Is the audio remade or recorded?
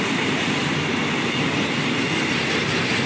recorded